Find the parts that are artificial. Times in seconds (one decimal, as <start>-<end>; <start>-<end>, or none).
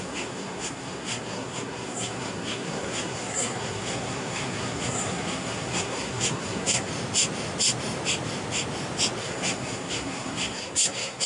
0.0-6.9; 9.2-11.3